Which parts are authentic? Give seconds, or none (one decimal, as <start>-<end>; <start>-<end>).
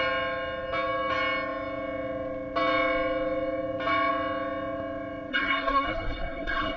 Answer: 0.0-5.3